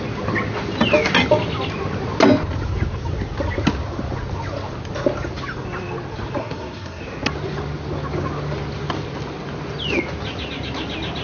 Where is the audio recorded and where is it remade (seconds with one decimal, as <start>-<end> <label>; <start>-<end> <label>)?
0.0-6.4 recorded; 6.4-7.0 remade; 7.0-11.2 recorded